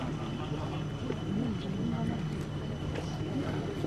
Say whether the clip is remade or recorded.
recorded